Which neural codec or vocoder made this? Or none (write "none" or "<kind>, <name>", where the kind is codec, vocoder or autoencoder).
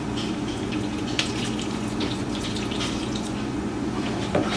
vocoder, Vocos